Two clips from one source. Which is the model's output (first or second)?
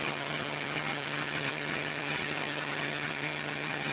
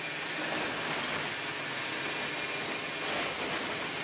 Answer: first